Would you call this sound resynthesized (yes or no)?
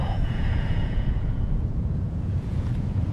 yes